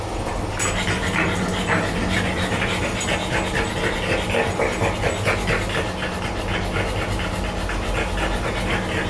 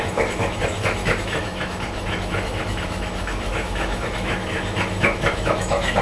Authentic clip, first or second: first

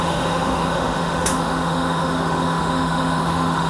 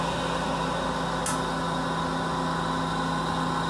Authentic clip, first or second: second